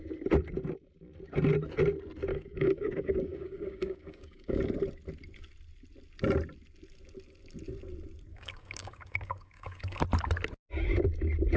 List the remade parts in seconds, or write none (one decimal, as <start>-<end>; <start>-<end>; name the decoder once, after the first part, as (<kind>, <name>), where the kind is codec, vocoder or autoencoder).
2.3-4.6 (codec, DAC); 8.3-10.0